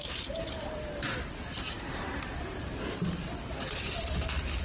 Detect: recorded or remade recorded